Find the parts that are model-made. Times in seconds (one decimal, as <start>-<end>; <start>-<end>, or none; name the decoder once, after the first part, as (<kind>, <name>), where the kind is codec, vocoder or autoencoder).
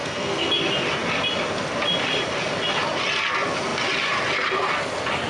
0.0-0.5 (codec, SNAC)